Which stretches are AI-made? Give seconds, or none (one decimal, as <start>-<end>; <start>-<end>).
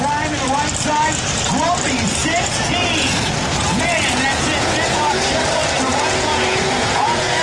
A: 2.2-5.1; 5.9-7.4